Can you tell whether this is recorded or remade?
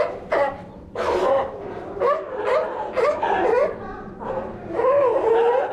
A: recorded